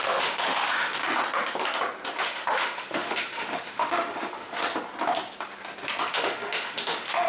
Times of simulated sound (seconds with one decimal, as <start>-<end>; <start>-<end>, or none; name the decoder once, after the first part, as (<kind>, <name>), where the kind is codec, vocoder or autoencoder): 0.0-1.0 (autoencoder, DAC-VAE); 2.1-4.6; 6.1-7.3